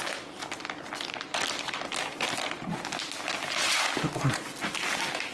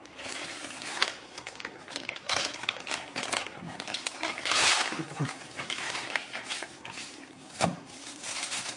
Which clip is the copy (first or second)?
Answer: second